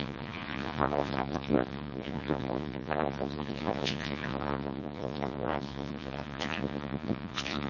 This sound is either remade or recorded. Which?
remade